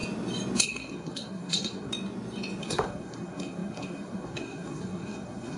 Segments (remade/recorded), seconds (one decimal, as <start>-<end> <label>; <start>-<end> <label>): 0.0-0.6 recorded; 0.6-1.9 remade; 1.9-2.6 recorded; 2.6-5.6 remade